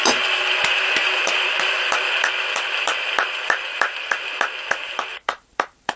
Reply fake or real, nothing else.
fake